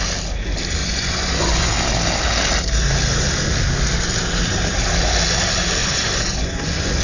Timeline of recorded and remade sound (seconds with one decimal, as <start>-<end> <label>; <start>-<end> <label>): 0.0-0.8 recorded; 0.8-1.7 remade; 1.7-5.8 recorded; 5.8-7.0 remade